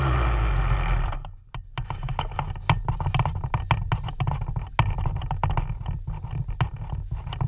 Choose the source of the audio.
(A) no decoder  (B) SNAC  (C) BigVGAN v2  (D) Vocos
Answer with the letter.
A